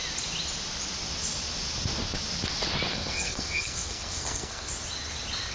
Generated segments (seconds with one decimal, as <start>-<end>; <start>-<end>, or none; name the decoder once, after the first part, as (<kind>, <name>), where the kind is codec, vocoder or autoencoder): 2.9-4.7 (codec, SNAC)